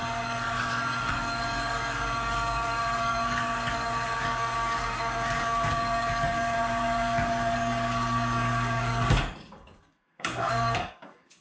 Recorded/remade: remade